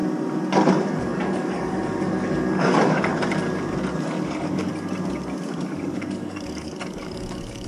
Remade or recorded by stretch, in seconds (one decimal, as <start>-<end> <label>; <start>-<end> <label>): 0.0-0.7 recorded; 0.7-3.1 remade; 3.1-4.1 recorded; 4.1-4.7 remade; 4.7-5.5 recorded; 5.5-7.7 remade